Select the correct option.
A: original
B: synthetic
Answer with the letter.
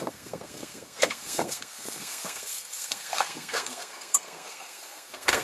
B